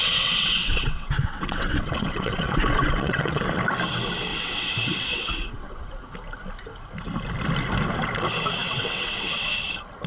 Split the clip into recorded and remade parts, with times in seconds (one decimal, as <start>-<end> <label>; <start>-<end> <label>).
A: 0.0-3.4 remade; 3.4-4.3 recorded; 4.3-5.9 remade; 5.9-8.6 recorded; 8.6-9.3 remade; 9.3-10.1 recorded

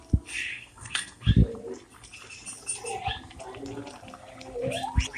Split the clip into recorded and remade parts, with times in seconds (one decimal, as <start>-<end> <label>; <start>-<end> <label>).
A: 0.0-0.5 recorded; 0.5-1.3 remade; 1.3-5.2 recorded

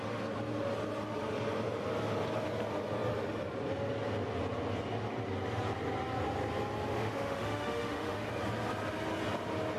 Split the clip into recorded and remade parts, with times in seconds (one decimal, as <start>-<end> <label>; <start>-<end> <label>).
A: 0.0-6.9 recorded; 6.9-8.3 remade; 8.3-9.8 recorded

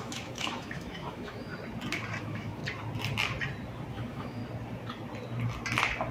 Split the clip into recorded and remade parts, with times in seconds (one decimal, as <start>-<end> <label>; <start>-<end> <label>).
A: 0.0-1.5 remade; 1.5-2.2 recorded; 2.2-2.6 remade; 2.6-3.9 recorded; 3.9-4.4 remade; 4.4-6.1 recorded

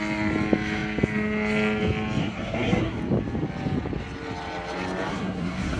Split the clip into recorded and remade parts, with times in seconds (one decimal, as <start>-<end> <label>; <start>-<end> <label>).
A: 0.0-2.2 recorded; 2.2-3.0 remade; 3.0-5.1 recorded; 5.1-5.8 remade

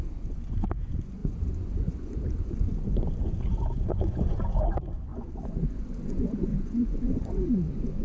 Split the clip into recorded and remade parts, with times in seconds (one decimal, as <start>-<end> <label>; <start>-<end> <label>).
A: 0.0-8.0 remade

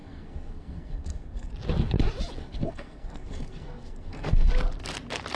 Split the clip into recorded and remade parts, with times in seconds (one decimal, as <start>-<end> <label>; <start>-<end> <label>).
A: 0.0-1.5 remade; 1.5-2.4 recorded; 2.4-4.5 remade; 4.5-5.3 recorded